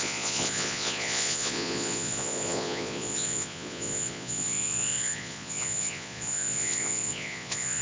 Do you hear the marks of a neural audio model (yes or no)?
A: yes